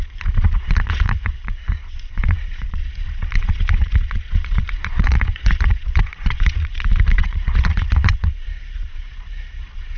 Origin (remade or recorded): remade